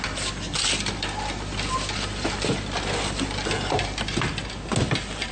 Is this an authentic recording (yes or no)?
yes